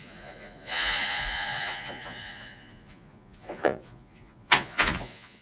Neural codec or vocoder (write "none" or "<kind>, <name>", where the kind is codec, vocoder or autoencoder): vocoder, Vocos